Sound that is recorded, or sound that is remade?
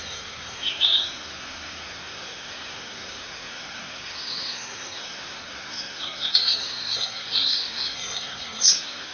remade